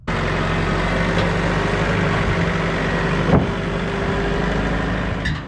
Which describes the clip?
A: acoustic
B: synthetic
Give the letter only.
A